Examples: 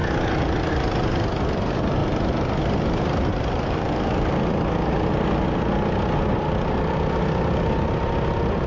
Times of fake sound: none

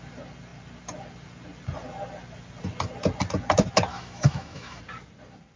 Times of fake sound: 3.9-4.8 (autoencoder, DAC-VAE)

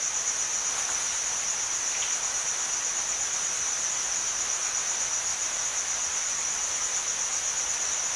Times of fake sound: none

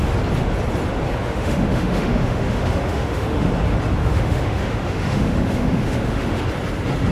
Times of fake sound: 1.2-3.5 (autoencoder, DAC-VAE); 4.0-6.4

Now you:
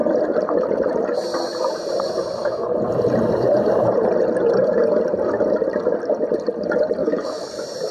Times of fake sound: 7.0-7.5 (autoencoder, DAC-VAE)

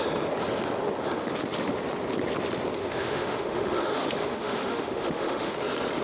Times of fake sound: 2.8-5.5 (autoencoder, DAC-VAE)